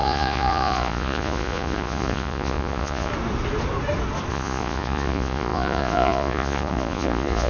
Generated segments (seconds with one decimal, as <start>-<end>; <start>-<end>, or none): 0.0-3.1; 4.3-7.5